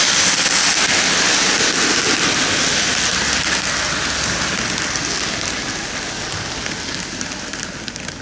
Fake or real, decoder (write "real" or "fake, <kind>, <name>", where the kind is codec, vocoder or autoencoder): real